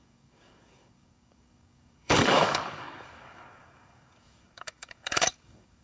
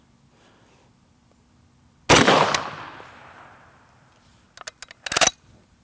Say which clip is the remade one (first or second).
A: first